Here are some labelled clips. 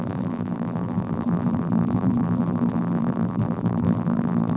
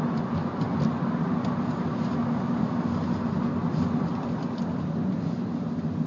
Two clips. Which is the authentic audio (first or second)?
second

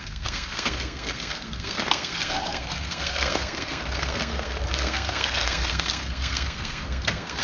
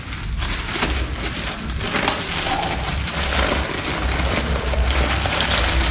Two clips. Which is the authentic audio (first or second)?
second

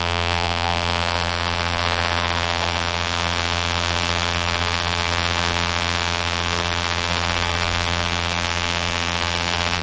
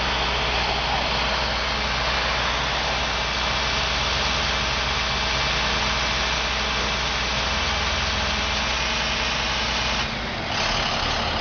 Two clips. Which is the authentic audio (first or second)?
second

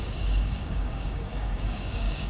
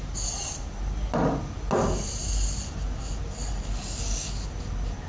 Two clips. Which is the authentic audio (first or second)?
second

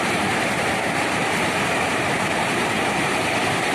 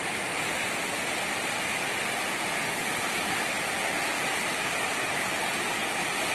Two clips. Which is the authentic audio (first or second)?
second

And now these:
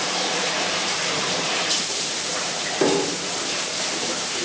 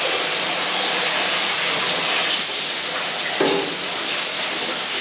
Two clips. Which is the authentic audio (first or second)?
second